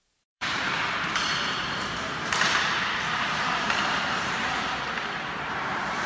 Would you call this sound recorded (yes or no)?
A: no